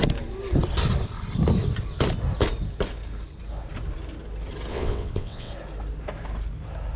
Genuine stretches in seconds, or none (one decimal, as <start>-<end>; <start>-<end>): 0.0-4.7; 5.5-7.0